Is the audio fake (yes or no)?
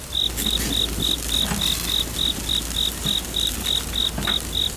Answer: no